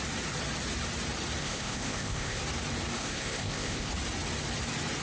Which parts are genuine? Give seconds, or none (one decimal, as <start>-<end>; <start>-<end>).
0.0-1.4; 2.4-3.0; 3.9-5.0